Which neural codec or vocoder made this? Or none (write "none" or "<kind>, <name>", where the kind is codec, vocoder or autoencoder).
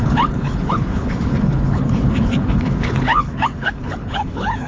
codec, HILCodec